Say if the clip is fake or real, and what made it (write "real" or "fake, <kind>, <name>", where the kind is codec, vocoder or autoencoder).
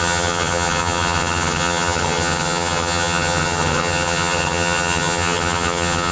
fake, vocoder, HiFi-GAN